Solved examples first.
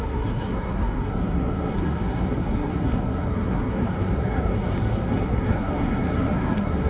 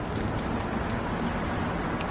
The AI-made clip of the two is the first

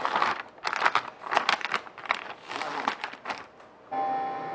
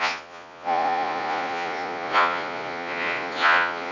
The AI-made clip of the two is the second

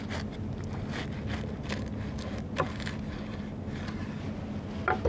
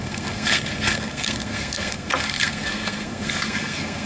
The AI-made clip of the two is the second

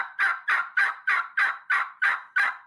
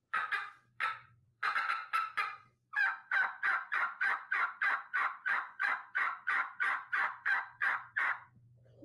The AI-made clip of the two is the second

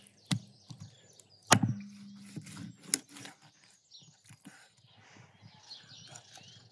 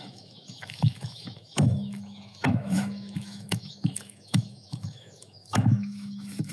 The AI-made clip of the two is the second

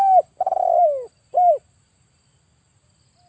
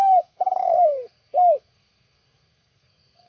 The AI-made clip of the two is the second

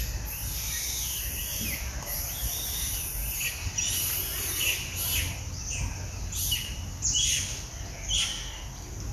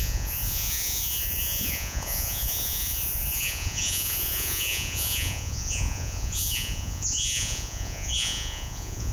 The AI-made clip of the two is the second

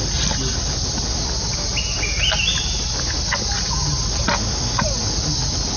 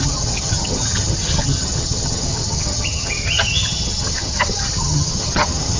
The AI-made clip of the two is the second